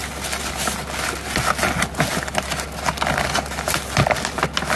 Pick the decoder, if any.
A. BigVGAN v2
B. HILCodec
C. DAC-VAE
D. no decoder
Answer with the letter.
D